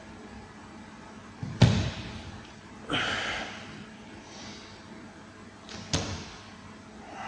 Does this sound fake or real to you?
real